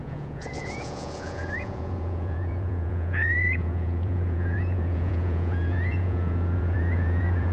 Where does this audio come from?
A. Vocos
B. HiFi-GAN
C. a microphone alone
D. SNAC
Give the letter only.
A